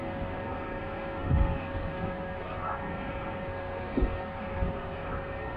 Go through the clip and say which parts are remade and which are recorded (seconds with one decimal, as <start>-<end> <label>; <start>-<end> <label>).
0.0-5.6 remade